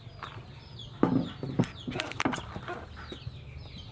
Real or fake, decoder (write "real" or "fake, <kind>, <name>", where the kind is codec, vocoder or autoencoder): real